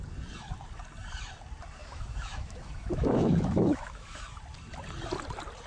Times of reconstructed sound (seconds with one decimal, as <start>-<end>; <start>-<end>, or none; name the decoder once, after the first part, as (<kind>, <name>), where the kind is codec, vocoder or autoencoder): 1.8-4.2 (autoencoder, DAC-VAE)